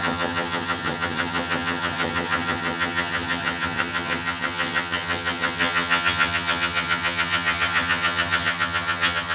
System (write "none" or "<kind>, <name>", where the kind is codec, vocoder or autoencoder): vocoder, HiFi-GAN